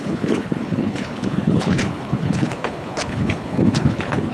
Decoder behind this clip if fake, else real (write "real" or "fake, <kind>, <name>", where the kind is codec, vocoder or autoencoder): fake, codec, HILCodec